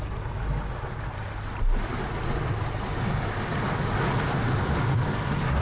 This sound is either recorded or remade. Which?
recorded